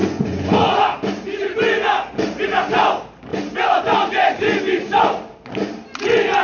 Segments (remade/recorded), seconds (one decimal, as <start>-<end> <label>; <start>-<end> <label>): 0.0-0.8 remade; 0.8-6.4 recorded